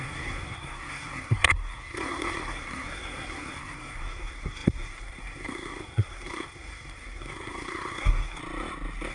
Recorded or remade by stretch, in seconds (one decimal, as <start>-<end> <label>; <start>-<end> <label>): 0.0-8.4 remade; 8.4-9.1 recorded